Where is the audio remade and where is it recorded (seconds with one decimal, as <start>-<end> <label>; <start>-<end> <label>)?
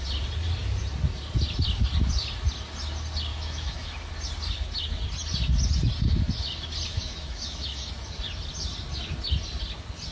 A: 0.0-3.3 recorded; 3.3-4.1 remade; 4.1-6.9 recorded; 6.9-7.9 remade; 7.9-10.1 recorded